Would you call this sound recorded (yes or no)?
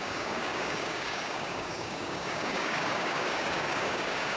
no